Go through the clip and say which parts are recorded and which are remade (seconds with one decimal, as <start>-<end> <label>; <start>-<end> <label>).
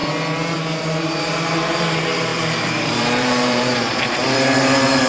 0.0-1.0 recorded; 1.0-5.1 remade